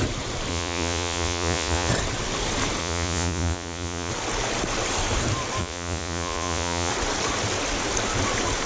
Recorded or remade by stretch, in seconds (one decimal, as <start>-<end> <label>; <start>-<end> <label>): 0.0-0.5 recorded; 0.5-1.9 remade; 1.9-2.8 recorded; 2.8-4.1 remade; 4.1-5.6 recorded; 5.6-6.9 remade; 6.9-8.7 recorded